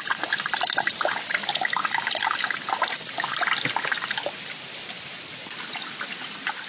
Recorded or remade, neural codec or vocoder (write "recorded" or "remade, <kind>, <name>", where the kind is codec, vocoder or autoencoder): recorded